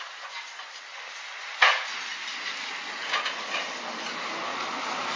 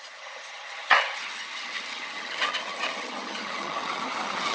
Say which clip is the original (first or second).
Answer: first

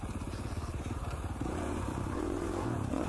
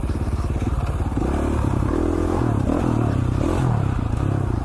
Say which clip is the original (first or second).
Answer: second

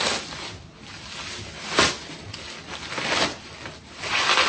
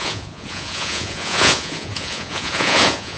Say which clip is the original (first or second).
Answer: first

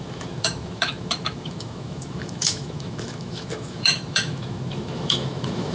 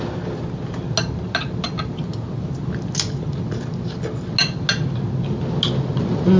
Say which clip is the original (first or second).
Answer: second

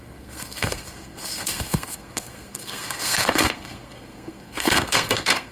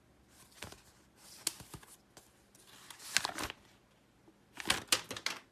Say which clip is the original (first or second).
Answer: second